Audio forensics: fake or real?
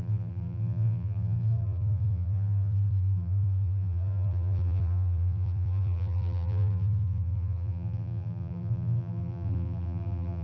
fake